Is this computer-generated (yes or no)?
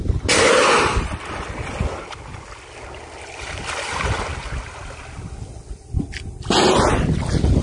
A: no